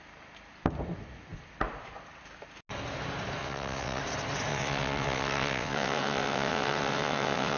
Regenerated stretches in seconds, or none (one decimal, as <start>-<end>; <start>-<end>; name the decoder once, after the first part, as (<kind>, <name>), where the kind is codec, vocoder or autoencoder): 3.4-4.0 (vocoder, WaveNeXt); 4.5-7.6